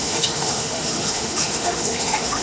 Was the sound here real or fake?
fake